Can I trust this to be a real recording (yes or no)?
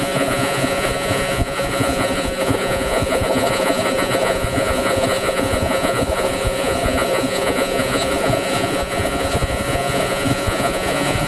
no